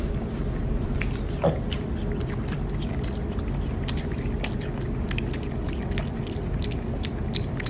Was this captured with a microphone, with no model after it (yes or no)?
yes